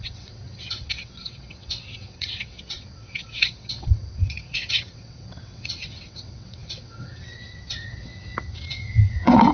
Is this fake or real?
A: fake